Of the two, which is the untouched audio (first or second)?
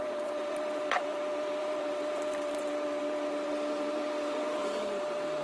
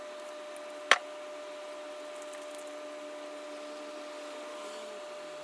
second